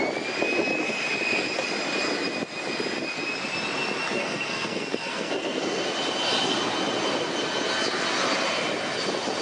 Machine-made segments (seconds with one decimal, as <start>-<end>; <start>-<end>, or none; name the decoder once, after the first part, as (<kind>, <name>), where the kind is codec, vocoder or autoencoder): 4.2-5.9 (codec, SNAC)